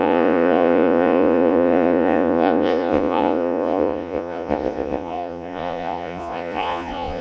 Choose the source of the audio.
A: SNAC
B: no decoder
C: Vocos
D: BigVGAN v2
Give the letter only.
C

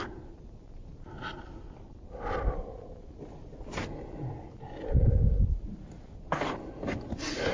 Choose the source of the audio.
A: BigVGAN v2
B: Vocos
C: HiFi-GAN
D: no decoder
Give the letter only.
D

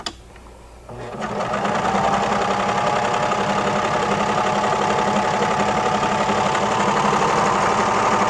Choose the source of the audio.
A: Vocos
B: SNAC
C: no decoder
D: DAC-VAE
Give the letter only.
C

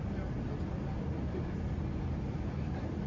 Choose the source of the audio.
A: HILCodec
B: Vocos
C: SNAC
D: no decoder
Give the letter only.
D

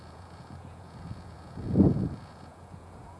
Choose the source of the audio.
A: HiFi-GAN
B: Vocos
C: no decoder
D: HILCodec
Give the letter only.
B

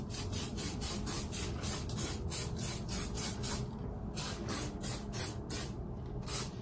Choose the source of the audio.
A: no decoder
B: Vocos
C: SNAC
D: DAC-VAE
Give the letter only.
A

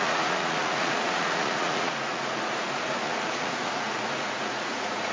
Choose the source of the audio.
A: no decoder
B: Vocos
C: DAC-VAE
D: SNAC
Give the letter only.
B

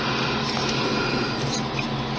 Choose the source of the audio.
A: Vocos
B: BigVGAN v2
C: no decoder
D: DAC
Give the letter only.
C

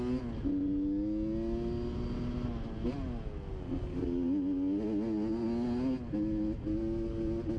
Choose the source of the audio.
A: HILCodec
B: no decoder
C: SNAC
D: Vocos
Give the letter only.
B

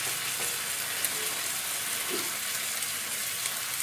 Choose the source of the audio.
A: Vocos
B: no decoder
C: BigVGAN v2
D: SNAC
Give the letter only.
B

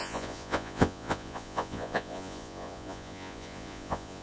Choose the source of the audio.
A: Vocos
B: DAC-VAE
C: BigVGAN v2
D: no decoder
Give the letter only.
A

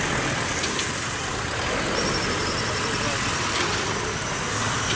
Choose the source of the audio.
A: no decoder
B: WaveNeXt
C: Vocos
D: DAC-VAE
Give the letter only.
A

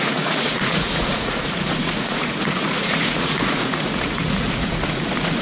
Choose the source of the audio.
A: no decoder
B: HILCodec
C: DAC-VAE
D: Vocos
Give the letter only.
D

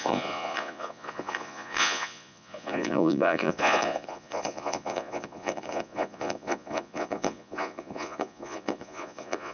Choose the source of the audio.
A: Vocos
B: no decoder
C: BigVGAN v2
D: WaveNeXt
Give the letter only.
A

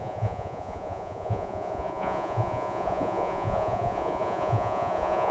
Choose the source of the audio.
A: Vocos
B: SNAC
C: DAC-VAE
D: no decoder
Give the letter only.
A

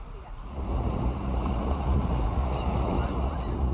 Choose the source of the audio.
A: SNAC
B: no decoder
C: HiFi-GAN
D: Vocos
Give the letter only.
D